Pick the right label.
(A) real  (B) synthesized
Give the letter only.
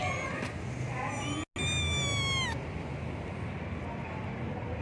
A